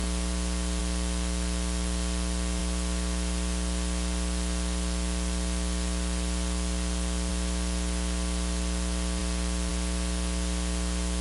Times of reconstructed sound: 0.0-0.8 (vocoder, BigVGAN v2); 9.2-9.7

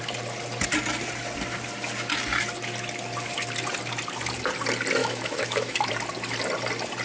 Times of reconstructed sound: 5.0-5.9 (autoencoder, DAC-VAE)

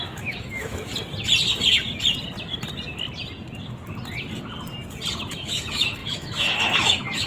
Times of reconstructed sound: 0.0-0.9 (autoencoder, DAC-VAE); 5.3-7.3

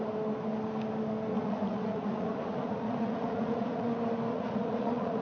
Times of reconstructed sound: 1.3-3.9 (vocoder, Vocos); 4.3-5.2

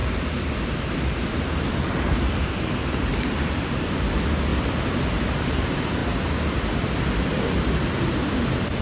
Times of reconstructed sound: 0.0-4.5 (vocoder, BigVGAN v2); 5.5-6.0; 8.4-8.8

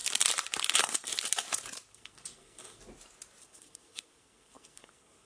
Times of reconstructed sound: 0.7-1.1 (codec, SNAC); 1.9-2.8; 3.4-5.3

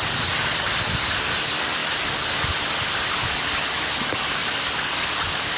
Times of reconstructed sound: none

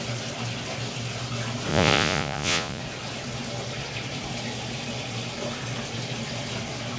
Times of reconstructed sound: 1.7-2.8 (vocoder, Vocos)